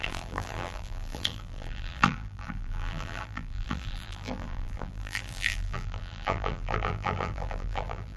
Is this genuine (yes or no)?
no